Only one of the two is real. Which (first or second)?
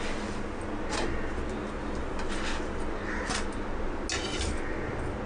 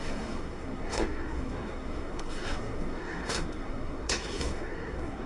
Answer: first